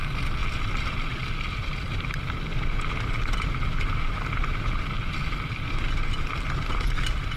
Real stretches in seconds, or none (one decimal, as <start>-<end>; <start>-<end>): 0.0-7.4